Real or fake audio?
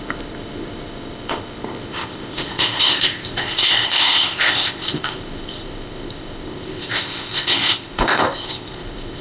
fake